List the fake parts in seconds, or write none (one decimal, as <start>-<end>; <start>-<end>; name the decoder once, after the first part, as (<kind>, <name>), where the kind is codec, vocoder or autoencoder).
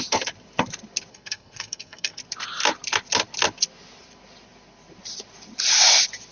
1.1-2.2 (codec, SNAC)